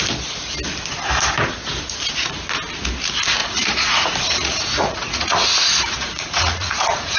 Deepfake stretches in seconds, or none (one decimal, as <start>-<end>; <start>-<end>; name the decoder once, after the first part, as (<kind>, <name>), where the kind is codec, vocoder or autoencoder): 3.4-7.2 (vocoder, Vocos)